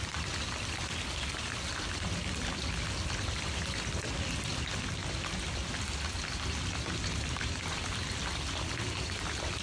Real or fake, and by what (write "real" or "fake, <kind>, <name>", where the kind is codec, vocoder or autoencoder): real